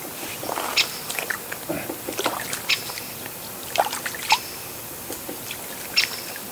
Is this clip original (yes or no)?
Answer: yes